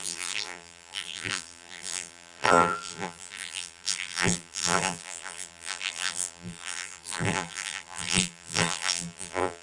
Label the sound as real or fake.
fake